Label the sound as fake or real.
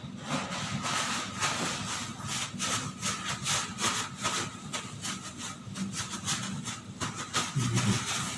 real